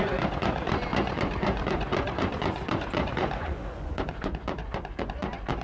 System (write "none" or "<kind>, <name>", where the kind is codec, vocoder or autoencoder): vocoder, Vocos